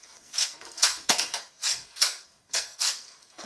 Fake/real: fake